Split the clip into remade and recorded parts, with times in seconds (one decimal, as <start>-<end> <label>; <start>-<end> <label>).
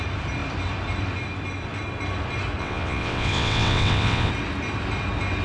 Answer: 0.0-2.6 recorded; 2.6-4.3 remade; 4.3-5.4 recorded